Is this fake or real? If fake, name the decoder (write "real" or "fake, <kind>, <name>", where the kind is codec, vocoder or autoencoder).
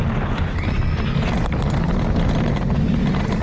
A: real